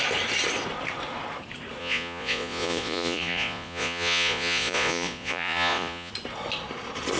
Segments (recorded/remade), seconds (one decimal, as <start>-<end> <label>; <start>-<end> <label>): 0.0-1.8 recorded; 1.8-6.1 remade; 6.1-7.2 recorded